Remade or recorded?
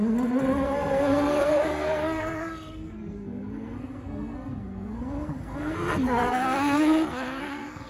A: remade